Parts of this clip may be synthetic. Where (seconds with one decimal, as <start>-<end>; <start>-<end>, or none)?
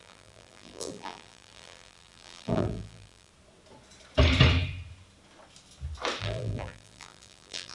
0.0-3.3; 6.2-7.7